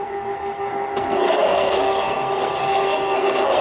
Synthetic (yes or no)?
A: yes